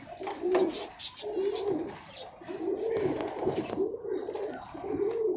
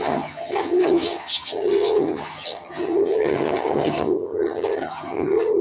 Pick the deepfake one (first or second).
second